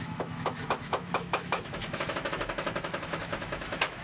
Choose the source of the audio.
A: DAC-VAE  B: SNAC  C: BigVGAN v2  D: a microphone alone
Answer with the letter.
A